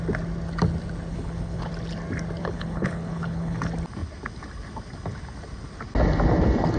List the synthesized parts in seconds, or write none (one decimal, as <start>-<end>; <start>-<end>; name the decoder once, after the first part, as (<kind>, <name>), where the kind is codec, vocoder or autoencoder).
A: 1.1-1.7 (codec, HILCodec); 2.4-3.6